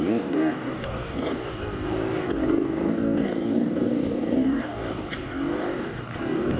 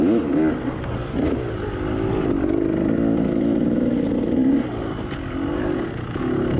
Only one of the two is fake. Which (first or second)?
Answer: first